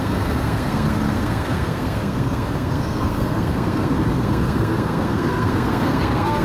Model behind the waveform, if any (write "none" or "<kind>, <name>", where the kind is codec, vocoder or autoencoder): codec, SNAC